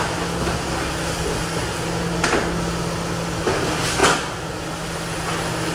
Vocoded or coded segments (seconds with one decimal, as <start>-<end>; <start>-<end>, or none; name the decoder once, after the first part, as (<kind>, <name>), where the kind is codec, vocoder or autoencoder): none